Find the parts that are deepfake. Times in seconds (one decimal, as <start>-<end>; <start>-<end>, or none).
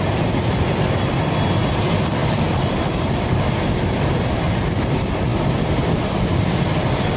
none